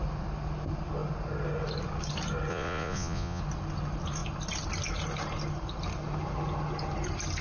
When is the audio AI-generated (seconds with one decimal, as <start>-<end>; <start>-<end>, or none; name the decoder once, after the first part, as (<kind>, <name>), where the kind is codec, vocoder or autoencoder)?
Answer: 2.5-3.4 (vocoder, Vocos)